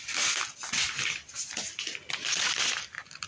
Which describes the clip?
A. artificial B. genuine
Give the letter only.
B